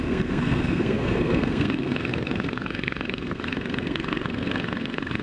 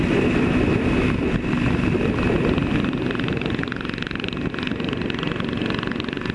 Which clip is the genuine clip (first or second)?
second